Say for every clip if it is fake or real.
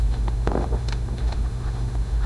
fake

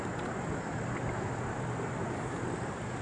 real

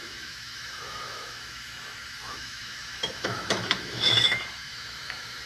fake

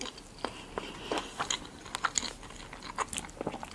real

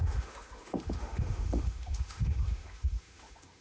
fake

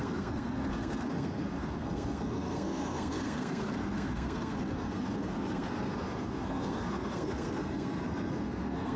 fake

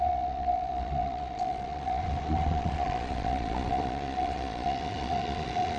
fake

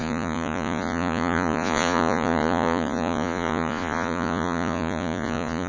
fake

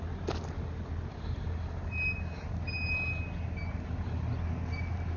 real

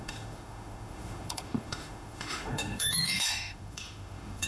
fake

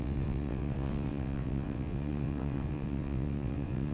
fake